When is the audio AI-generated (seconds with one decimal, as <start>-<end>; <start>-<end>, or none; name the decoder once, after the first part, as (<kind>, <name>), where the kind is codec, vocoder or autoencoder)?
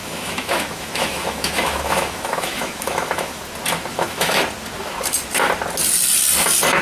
0.0-3.4 (autoencoder, DAC-VAE); 3.9-4.4